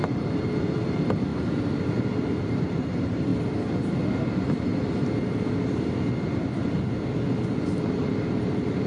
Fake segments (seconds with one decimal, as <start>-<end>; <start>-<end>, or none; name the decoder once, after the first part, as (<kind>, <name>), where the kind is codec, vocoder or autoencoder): 0.0-1.3 (vocoder, BigVGAN v2); 2.4-3.3; 7.9-8.9